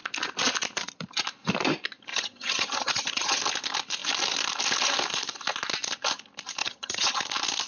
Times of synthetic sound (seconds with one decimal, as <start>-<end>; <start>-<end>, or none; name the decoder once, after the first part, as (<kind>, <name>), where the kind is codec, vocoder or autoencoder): 2.1-3.4 (vocoder, HiFi-GAN); 6.6-7.2